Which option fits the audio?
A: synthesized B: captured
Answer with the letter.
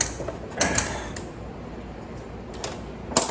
B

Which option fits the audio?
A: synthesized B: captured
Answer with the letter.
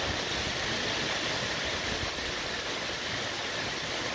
B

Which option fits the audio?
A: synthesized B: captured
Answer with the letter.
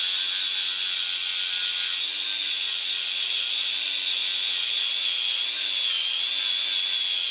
B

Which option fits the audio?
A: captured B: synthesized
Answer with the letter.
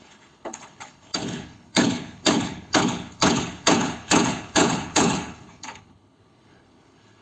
B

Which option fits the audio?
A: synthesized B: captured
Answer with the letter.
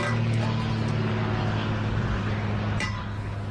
B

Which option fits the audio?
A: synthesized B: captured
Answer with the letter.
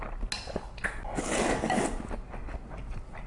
B